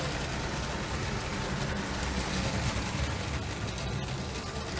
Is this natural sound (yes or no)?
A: yes